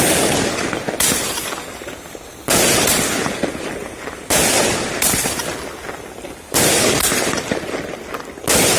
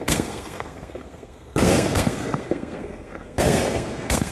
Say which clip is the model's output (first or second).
second